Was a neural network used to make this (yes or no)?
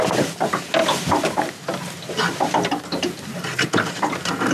no